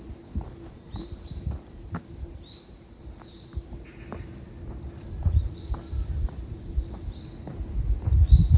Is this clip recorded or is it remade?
recorded